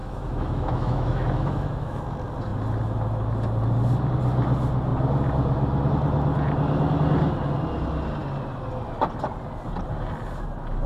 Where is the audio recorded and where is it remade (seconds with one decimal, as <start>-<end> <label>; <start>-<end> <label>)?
0.0-2.0 remade; 2.0-10.9 recorded